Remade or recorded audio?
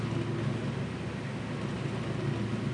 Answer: recorded